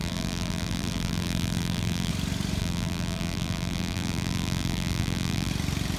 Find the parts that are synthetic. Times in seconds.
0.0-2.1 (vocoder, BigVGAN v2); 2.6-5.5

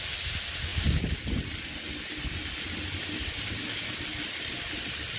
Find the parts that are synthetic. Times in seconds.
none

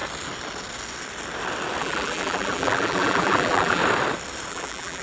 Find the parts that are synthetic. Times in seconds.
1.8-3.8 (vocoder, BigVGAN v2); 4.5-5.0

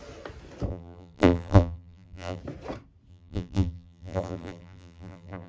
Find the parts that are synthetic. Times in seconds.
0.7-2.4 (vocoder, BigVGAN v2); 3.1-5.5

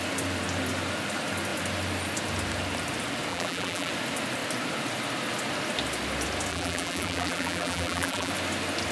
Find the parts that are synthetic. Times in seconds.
3.3-3.9 (vocoder, BigVGAN v2); 6.5-8.3

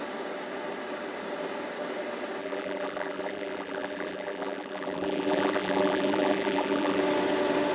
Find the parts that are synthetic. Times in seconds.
2.4-7.0 (vocoder, BigVGAN v2)

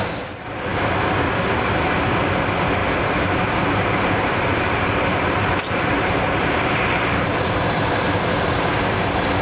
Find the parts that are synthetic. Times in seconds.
2.8-7.8 (vocoder, BigVGAN v2)

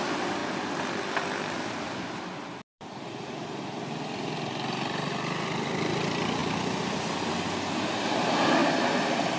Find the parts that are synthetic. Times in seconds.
0.4-5.1 (vocoder, BigVGAN v2); 8.6-9.4